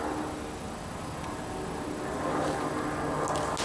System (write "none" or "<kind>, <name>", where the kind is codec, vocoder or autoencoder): none